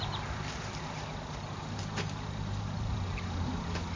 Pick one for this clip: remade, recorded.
remade